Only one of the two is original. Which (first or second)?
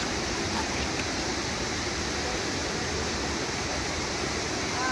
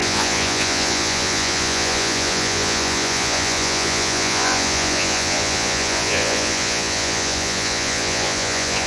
first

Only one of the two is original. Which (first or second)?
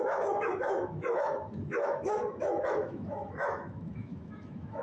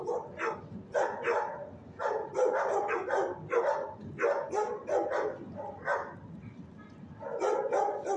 second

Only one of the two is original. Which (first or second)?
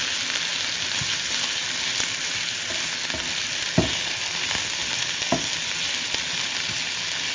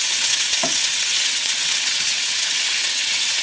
first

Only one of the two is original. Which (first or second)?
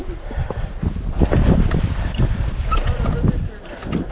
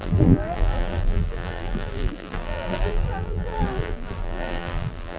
first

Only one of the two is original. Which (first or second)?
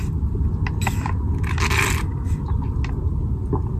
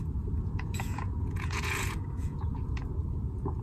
first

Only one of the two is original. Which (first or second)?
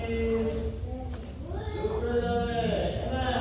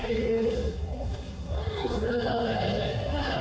first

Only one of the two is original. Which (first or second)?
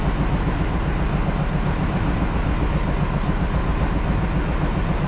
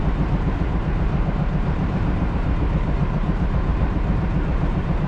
first